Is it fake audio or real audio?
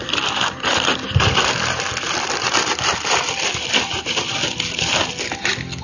fake